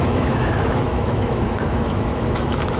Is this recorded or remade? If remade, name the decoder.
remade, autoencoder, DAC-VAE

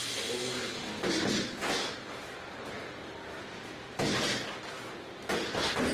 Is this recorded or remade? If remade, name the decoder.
recorded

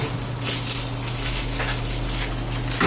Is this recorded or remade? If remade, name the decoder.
recorded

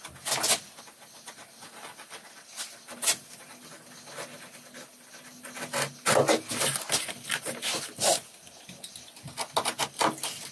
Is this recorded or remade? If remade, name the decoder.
recorded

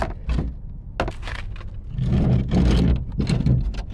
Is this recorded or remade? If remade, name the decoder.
recorded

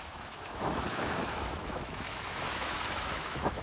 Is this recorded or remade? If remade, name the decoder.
remade, autoencoder, DAC-VAE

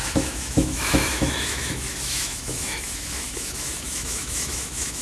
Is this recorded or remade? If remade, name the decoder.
remade, autoencoder, DAC-VAE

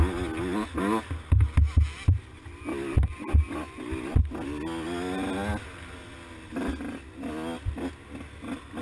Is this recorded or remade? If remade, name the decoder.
recorded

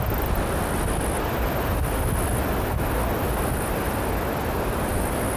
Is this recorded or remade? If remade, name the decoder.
recorded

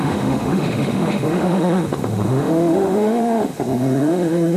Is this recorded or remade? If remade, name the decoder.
remade, autoencoder, DAC-VAE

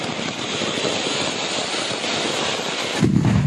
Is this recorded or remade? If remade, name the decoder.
recorded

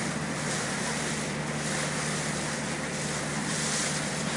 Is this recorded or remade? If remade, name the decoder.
recorded